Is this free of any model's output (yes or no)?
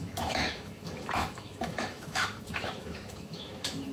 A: no